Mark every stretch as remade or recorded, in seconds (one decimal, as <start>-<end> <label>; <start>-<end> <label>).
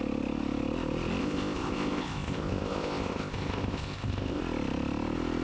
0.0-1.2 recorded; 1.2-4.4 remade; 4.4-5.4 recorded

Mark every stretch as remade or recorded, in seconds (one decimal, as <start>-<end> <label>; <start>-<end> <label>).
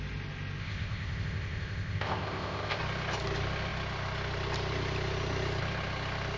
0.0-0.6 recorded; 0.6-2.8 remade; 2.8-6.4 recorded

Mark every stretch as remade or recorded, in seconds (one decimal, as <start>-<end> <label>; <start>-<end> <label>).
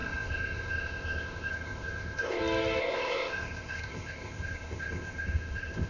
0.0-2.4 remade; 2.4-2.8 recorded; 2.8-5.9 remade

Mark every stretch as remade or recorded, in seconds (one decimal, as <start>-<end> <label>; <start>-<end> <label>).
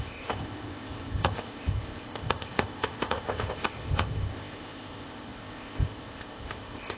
0.0-7.0 remade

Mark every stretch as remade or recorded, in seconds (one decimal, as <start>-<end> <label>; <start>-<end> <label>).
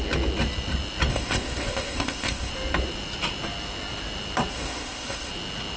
0.0-1.1 recorded; 1.1-2.5 remade; 2.5-4.5 recorded; 4.5-5.3 remade; 5.3-5.8 recorded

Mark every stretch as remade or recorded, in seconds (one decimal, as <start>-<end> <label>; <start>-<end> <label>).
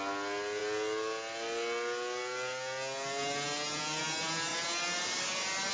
0.0-5.7 recorded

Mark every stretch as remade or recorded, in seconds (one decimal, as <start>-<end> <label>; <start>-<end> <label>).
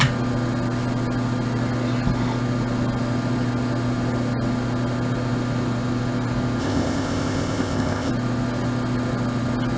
0.0-6.6 recorded; 6.6-8.1 remade; 8.1-9.8 recorded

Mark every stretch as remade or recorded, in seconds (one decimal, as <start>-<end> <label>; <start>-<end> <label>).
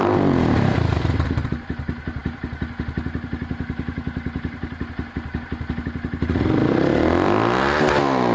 0.0-8.3 recorded